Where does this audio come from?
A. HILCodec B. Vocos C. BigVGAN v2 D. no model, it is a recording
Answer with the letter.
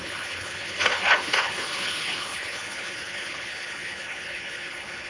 A